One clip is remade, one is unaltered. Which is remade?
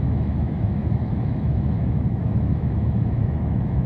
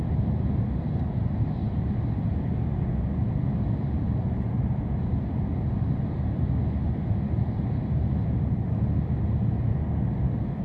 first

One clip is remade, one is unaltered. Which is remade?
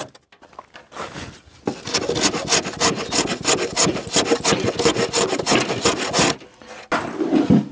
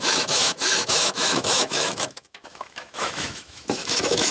second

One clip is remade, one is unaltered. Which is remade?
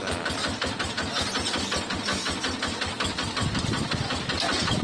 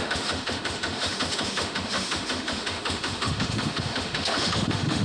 second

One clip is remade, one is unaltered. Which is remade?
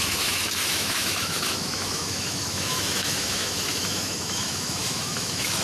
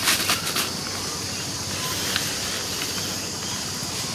first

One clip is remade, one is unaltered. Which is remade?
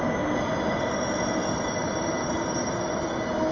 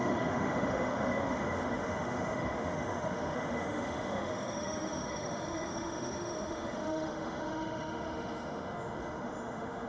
second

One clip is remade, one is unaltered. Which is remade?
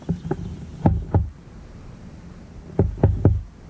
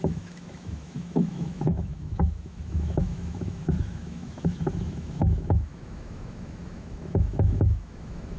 second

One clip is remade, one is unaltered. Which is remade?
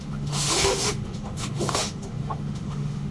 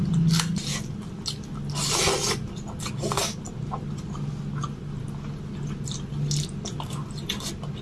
first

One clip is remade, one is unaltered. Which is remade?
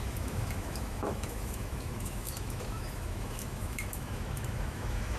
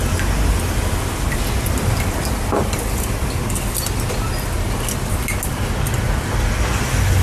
first